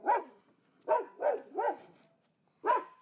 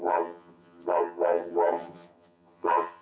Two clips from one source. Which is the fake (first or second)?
second